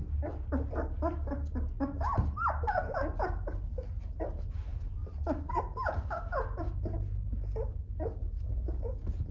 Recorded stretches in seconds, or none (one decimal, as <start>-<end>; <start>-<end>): 0.0-9.3